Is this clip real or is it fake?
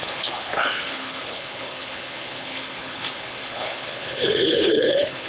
fake